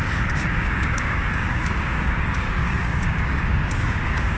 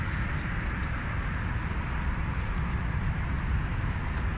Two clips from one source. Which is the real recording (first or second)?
second